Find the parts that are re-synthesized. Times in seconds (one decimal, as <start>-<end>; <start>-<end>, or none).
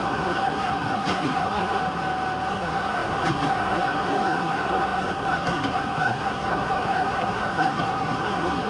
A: 0.0-1.8; 2.5-8.7